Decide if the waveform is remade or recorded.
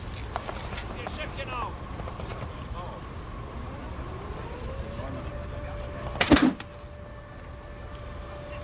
recorded